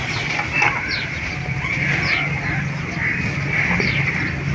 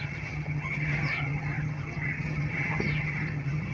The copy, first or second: second